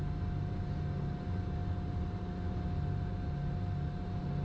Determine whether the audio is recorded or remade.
recorded